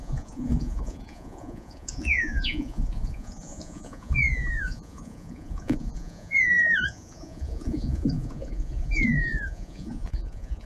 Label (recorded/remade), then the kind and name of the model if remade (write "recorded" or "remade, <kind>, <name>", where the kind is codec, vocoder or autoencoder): remade, vocoder, Vocos